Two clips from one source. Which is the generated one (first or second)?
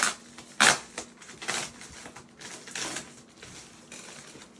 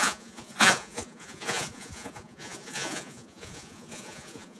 second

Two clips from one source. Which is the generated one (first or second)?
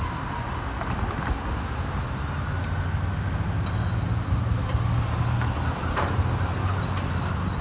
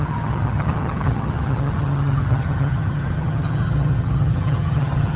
second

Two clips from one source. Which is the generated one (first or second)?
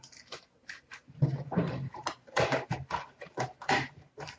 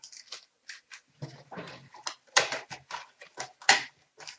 first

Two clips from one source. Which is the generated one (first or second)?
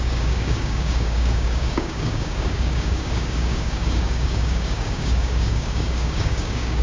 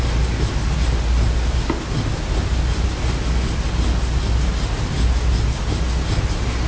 first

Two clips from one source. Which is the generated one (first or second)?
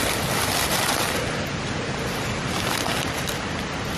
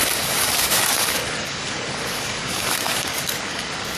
second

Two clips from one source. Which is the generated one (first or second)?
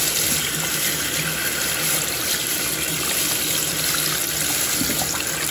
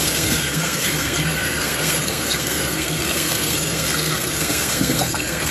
second